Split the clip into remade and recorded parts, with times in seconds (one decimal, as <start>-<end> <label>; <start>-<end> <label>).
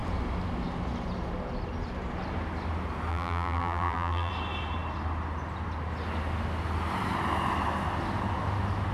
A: 0.0-3.1 recorded; 3.1-4.3 remade; 4.3-8.9 recorded